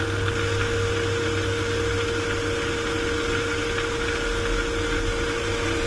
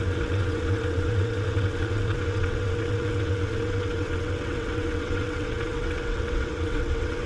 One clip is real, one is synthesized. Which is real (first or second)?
first